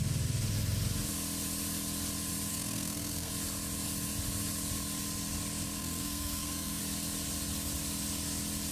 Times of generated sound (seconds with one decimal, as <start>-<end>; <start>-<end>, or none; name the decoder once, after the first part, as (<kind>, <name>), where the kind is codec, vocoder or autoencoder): 2.5-3.3 (codec, SNAC); 5.8-6.8